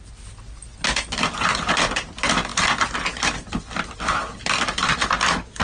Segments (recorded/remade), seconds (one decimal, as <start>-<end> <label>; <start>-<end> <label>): 0.0-5.6 recorded